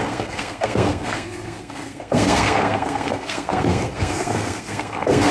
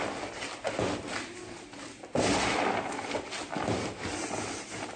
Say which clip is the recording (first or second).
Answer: second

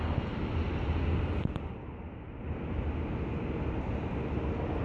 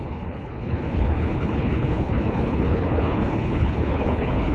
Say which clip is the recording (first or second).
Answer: first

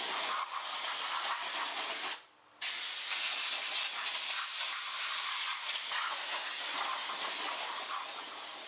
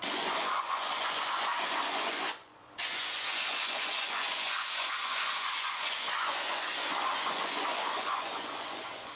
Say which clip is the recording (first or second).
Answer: first